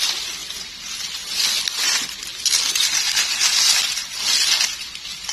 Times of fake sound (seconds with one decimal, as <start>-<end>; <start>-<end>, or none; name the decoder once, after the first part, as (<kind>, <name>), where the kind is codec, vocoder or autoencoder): none